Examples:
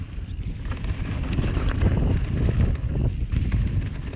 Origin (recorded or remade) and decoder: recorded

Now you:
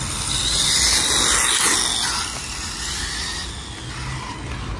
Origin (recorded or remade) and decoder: recorded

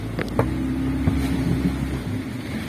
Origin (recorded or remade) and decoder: recorded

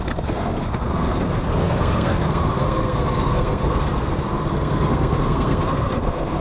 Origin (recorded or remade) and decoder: remade, codec, SNAC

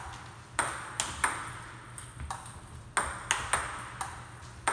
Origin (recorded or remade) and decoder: recorded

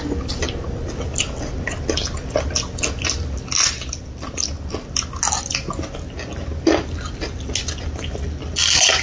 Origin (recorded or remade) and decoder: recorded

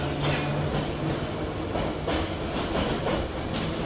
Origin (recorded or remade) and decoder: recorded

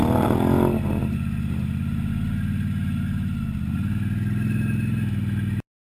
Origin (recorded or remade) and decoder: recorded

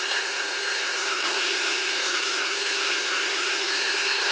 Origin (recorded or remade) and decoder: remade, codec, SNAC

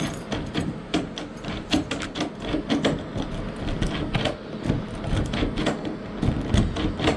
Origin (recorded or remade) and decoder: recorded